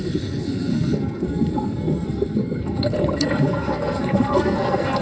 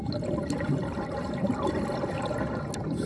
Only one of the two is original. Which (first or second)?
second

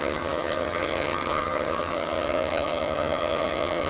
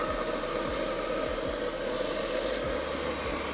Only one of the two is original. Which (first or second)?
second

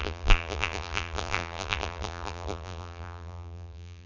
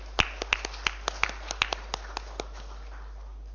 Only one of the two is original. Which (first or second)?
second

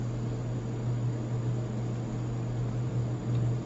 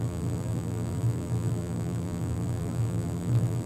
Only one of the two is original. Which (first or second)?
first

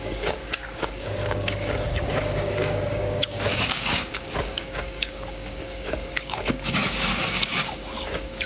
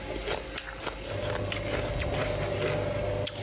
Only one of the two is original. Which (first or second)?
second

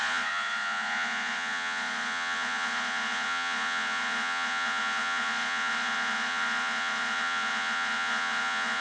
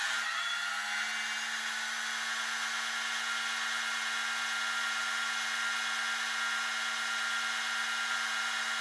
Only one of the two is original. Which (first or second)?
second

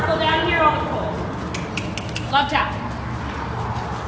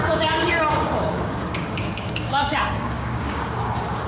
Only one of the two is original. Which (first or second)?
first